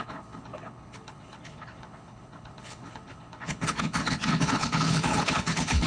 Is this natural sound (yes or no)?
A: no